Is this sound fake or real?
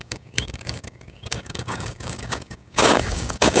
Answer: fake